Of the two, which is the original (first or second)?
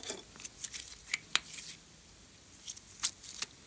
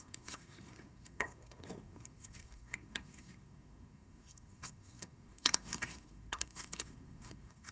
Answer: first